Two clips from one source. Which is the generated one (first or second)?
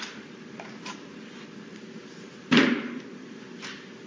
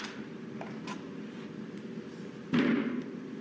first